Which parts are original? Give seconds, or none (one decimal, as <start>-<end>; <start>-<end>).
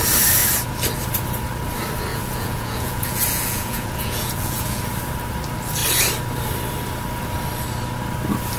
0.0-2.1; 4.8-8.6